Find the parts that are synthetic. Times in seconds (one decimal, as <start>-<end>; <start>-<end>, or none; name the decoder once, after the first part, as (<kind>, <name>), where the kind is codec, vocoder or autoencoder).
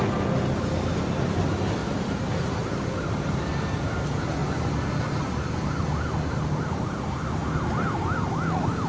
1.8-2.4 (vocoder, BigVGAN v2)